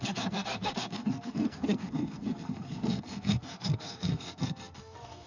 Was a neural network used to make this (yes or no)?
yes